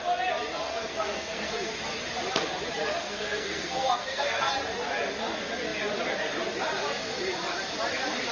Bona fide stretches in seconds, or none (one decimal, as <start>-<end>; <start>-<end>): 0.0-0.7; 1.7-2.8; 4.5-8.3